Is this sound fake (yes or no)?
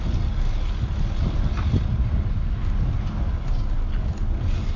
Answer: no